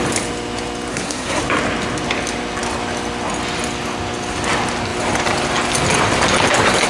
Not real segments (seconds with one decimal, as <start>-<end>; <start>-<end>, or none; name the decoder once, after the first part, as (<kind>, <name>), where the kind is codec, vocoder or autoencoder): 0.9-1.4 (codec, SNAC)